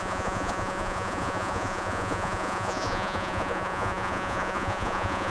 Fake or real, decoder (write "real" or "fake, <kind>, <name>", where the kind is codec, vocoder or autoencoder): fake, vocoder, Vocos